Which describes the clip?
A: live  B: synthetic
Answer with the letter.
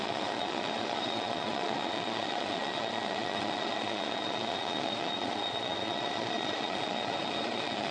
B